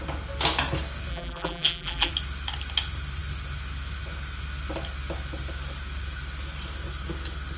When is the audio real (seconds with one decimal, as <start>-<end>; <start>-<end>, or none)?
0.0-1.1; 2.1-7.6

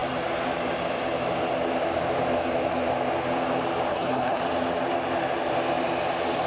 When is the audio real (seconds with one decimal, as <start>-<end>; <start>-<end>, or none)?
0.0-3.9; 4.4-6.5

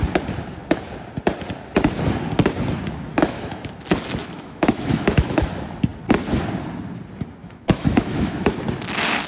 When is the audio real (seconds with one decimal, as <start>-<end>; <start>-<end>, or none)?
0.0-3.1; 3.7-4.2; 5.5-7.4; 8.5-9.3

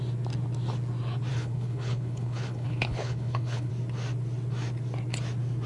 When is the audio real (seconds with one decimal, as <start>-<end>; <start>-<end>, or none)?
0.0-1.3; 3.7-5.7

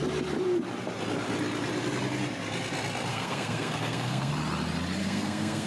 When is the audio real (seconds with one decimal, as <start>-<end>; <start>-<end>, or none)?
0.0-3.1; 4.3-5.0

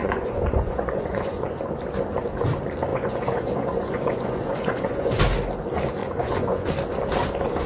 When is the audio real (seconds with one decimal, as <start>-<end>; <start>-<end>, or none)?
1.6-2.9; 5.2-6.0; 6.7-7.7

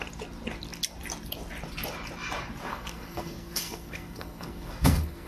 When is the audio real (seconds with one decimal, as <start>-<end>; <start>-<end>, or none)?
0.0-2.7